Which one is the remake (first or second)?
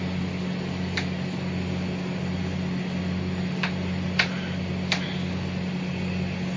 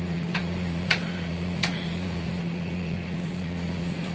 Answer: second